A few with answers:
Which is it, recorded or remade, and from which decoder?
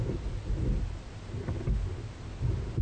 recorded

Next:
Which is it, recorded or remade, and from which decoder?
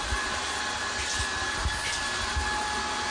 recorded